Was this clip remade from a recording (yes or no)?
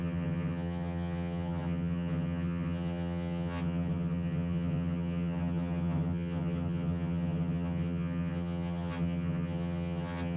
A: yes